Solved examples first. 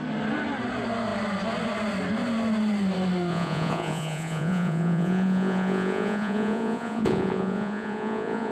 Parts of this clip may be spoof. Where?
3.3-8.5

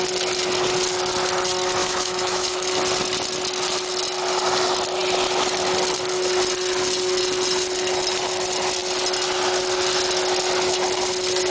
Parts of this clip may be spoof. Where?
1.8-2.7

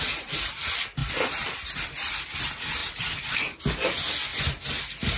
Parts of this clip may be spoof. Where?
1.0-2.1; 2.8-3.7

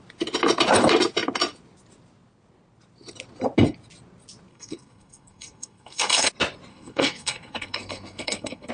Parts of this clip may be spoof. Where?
4.5-6.3; 6.7-8.7

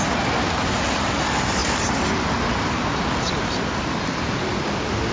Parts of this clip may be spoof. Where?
none